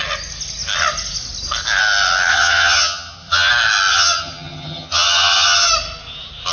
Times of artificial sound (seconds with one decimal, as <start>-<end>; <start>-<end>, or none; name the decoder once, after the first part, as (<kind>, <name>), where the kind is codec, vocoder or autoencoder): 2.3-3.5 (vocoder, HiFi-GAN); 3.9-5.7